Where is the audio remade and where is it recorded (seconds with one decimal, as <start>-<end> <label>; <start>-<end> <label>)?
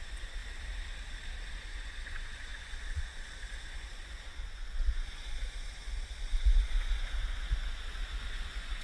0.0-0.4 remade; 0.4-1.5 recorded; 1.5-8.8 remade